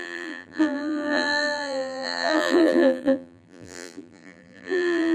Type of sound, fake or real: fake